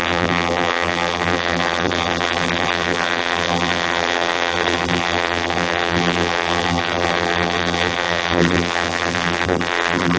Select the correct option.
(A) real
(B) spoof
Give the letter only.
B